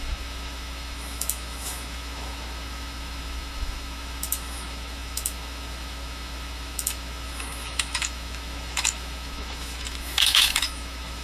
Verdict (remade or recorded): remade